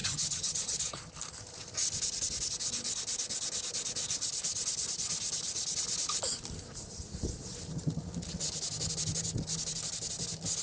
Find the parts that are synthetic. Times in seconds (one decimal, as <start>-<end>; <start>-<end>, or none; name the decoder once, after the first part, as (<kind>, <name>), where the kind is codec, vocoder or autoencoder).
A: 0.0-1.0 (vocoder, HiFi-GAN)